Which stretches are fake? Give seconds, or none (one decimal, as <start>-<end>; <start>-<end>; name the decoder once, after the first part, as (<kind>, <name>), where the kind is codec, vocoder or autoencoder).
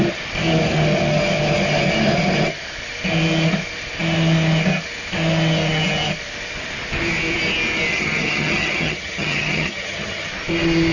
7.9-10.3 (vocoder, HiFi-GAN)